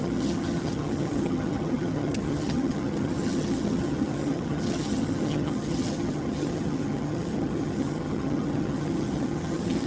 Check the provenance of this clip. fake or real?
fake